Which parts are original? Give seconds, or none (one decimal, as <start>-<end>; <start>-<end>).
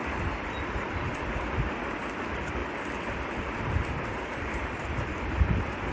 none